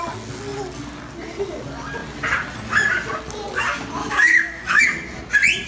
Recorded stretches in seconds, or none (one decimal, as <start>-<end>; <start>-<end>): 0.0-4.0; 4.8-5.7